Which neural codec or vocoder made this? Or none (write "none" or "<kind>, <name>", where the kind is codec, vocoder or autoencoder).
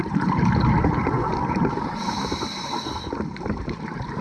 vocoder, BigVGAN v2